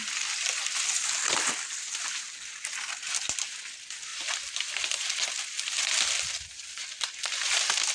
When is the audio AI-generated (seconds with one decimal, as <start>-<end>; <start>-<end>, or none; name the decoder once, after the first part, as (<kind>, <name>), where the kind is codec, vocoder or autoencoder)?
none